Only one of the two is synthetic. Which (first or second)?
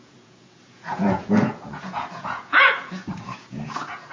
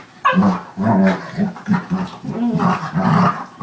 first